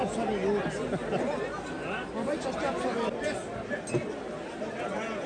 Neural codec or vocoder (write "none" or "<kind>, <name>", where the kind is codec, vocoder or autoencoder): none